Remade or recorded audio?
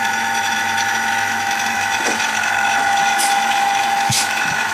remade